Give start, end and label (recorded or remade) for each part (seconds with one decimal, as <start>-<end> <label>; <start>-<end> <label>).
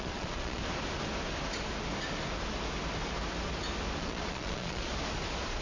0.0-0.6 remade; 0.6-4.0 recorded; 4.0-4.9 remade; 4.9-5.6 recorded